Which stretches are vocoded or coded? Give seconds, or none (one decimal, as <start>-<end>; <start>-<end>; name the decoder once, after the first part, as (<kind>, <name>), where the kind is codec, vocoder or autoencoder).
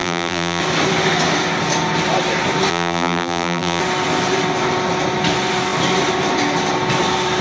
0.0-0.6 (vocoder, BigVGAN v2); 2.7-3.8